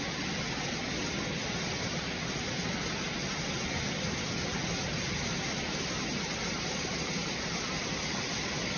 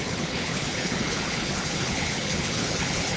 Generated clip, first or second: second